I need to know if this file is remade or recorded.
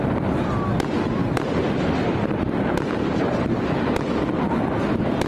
recorded